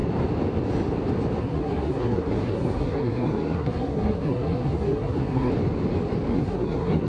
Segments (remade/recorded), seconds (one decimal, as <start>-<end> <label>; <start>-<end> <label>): 0.0-1.4 recorded; 1.4-5.5 remade; 5.5-6.3 recorded; 6.3-7.1 remade